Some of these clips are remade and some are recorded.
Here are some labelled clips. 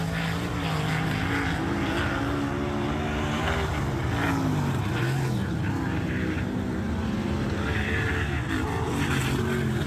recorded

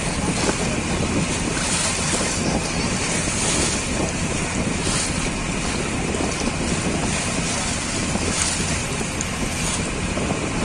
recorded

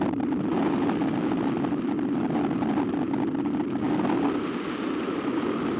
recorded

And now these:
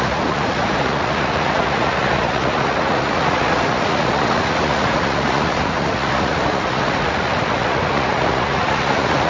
remade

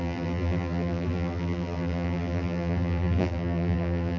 remade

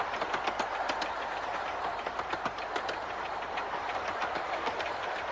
recorded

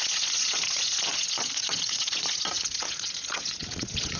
remade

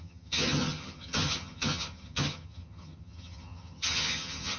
remade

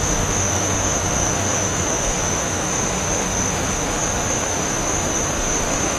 remade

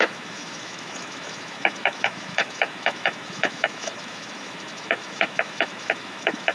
remade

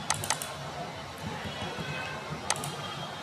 recorded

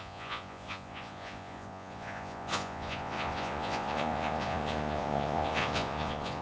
remade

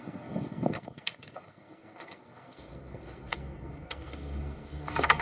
remade